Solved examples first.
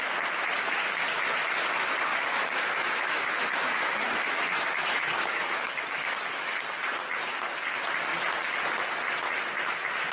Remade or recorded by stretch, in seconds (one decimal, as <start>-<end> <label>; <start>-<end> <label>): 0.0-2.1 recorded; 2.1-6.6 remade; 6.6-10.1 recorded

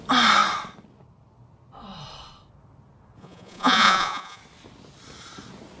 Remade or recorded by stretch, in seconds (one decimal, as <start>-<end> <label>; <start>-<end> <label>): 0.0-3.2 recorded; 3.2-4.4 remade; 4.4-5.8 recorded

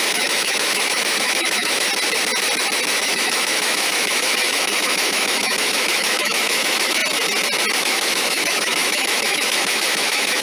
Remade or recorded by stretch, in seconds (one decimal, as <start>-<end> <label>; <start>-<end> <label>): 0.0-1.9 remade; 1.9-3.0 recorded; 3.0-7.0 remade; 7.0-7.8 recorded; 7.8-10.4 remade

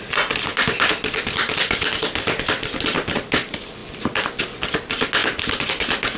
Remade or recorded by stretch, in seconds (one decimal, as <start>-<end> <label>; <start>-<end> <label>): 0.0-6.2 recorded

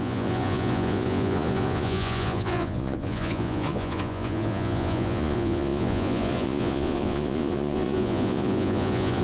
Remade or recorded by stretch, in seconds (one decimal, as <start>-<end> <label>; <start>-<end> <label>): 0.0-9.2 remade